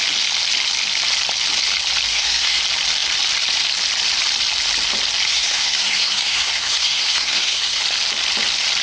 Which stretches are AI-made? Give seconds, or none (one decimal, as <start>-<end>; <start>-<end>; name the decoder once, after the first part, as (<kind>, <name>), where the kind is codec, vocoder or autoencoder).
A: 2.1-2.6 (codec, SNAC); 5.3-7.8